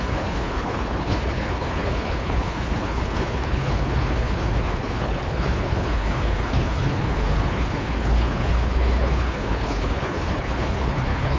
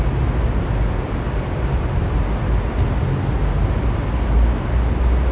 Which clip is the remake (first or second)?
first